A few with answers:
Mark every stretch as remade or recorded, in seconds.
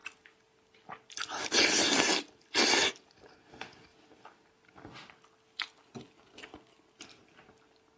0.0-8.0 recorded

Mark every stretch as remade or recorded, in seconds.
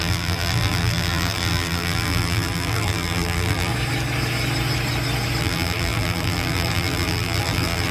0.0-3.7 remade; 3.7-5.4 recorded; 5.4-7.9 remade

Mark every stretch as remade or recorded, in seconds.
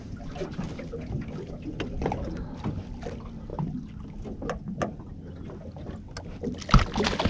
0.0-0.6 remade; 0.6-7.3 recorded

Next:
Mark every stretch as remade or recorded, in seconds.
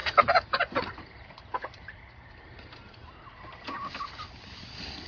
0.0-3.1 remade; 3.1-5.1 recorded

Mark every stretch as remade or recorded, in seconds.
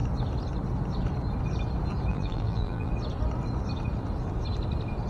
0.0-2.1 recorded; 2.1-2.9 remade; 2.9-5.1 recorded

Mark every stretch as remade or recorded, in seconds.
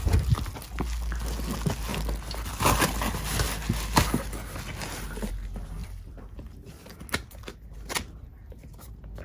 0.0-5.8 recorded; 5.8-6.4 remade; 6.4-9.2 recorded